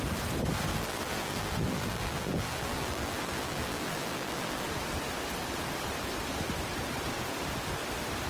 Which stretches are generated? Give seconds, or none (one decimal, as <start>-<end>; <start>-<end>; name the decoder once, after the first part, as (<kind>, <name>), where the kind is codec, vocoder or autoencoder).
0.7-4.6 (vocoder, BigVGAN v2)